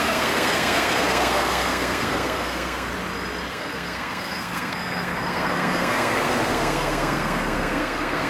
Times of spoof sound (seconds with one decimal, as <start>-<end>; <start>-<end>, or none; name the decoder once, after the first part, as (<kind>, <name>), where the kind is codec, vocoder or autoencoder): 0.0-2.9 (codec, SNAC); 3.5-8.3